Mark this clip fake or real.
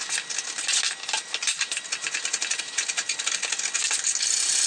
real